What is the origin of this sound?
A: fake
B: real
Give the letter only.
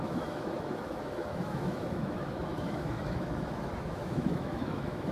A